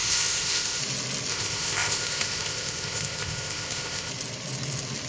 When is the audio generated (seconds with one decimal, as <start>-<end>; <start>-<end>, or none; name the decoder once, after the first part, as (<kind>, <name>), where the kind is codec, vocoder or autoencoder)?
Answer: 0.0-0.8 (codec, ZipCodec); 1.3-4.1